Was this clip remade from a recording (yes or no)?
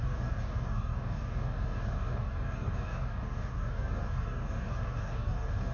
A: yes